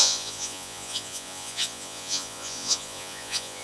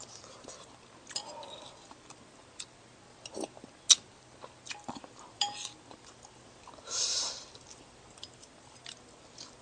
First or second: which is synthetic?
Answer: first